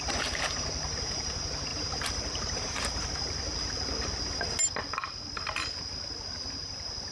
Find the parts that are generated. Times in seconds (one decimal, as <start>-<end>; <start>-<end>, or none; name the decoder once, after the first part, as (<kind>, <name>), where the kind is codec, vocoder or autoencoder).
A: none